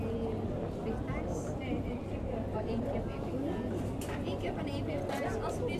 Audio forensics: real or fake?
real